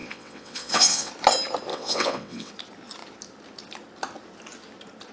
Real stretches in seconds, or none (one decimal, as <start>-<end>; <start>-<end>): 1.1-1.7; 2.5-5.1